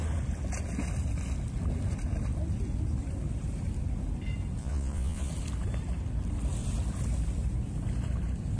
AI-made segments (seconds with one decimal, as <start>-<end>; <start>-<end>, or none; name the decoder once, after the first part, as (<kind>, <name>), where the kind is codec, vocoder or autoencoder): 4.6-5.3 (vocoder, Vocos)